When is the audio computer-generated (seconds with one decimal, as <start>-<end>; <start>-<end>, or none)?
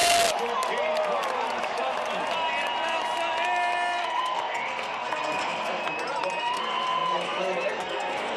4.0-5.8; 6.4-8.4